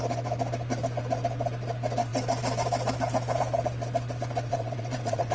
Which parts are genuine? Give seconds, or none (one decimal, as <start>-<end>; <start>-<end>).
0.0-4.5